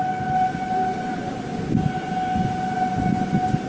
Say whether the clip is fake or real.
real